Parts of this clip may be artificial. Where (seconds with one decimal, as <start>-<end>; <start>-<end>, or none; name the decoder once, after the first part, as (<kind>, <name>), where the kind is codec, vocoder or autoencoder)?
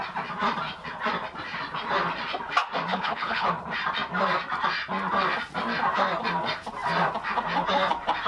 2.9-3.5 (codec, HILCodec)